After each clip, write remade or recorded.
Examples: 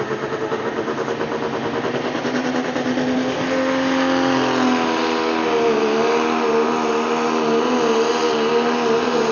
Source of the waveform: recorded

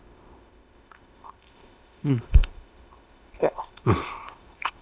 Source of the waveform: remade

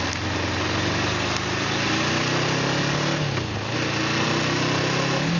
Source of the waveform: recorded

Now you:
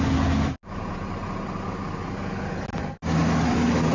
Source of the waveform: recorded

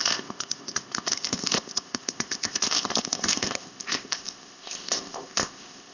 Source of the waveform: remade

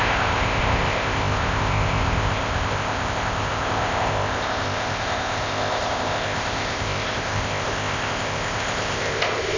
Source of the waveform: remade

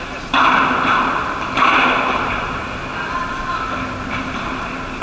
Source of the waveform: recorded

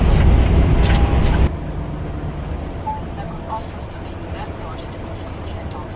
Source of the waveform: recorded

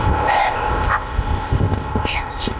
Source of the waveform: remade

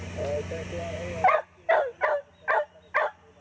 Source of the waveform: recorded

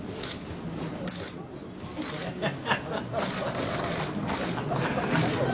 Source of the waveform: recorded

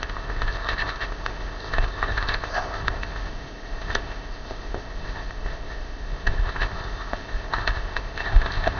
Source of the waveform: remade